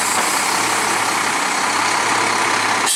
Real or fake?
real